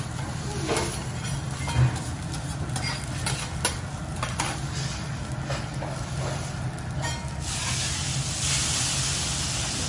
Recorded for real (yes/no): yes